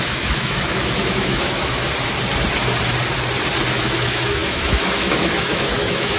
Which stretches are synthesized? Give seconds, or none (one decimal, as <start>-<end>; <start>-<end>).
0.0-1.8; 3.7-6.2